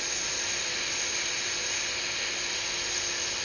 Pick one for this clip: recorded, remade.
recorded